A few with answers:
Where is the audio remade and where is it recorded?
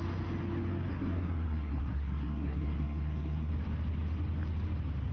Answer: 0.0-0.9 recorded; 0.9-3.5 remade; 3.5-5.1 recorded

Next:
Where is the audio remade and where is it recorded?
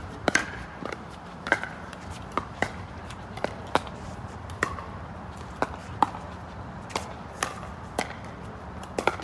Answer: 0.0-4.3 remade; 4.3-9.2 recorded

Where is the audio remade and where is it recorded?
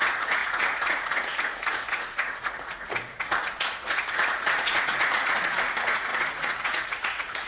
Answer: 0.0-7.5 remade